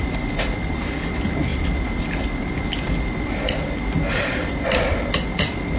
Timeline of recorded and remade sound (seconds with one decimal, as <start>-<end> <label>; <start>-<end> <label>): 0.0-5.8 recorded